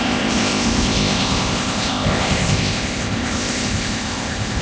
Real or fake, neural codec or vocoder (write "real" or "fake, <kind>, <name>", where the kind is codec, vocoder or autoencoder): fake, codec, ZipCodec